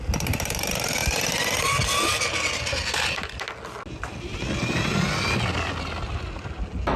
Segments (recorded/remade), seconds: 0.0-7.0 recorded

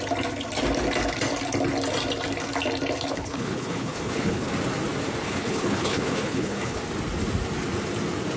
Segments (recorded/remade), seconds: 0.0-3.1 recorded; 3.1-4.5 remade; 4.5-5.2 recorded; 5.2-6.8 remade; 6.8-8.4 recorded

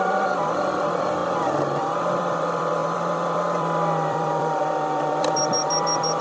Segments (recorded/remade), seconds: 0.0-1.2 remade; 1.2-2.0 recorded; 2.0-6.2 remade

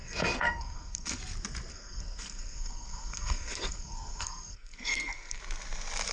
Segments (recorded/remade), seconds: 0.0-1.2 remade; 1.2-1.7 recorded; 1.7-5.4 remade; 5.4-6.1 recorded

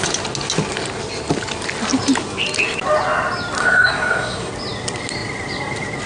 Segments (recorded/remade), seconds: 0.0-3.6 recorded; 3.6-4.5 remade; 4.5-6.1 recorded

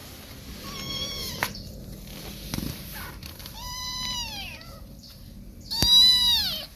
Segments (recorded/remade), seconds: 0.0-0.6 remade; 0.6-1.2 recorded; 1.2-5.1 remade; 5.1-6.8 recorded

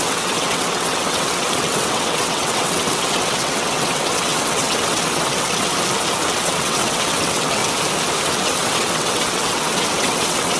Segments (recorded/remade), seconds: 0.0-5.7 remade; 5.7-6.3 recorded; 6.3-7.6 remade; 7.6-8.2 recorded; 8.2-10.6 remade